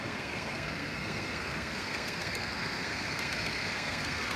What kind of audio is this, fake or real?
fake